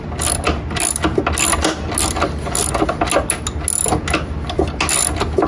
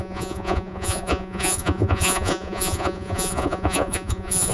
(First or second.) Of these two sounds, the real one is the first